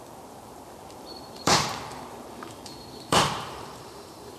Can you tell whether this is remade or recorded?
remade